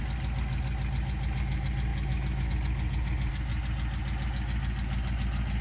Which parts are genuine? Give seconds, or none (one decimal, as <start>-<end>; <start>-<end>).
0.0-1.9; 2.5-5.6